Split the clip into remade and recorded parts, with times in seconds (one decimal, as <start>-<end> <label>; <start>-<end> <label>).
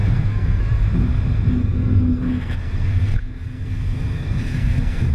0.0-0.6 remade; 0.6-1.6 recorded; 1.6-5.1 remade